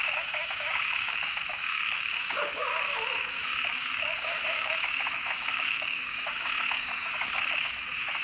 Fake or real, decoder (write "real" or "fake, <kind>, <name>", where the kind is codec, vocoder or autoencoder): fake, autoencoder, DAC-VAE